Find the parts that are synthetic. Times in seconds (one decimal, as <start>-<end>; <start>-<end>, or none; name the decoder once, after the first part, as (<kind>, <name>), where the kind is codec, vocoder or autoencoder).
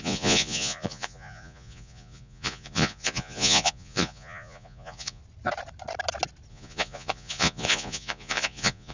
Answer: 0.0-5.2 (vocoder, Vocos); 6.5-8.9